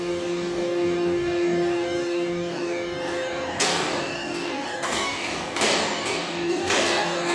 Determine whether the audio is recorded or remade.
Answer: remade